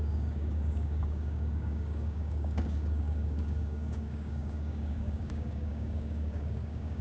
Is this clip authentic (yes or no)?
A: no